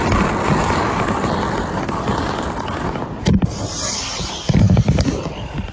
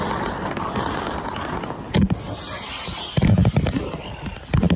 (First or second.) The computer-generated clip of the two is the first